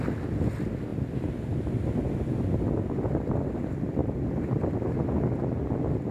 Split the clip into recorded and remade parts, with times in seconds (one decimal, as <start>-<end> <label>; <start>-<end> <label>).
0.0-4.0 recorded; 4.0-4.8 remade; 4.8-6.1 recorded